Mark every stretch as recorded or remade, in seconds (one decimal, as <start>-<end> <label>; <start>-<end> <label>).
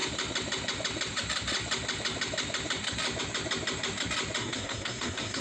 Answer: 0.0-4.4 recorded; 4.4-5.4 remade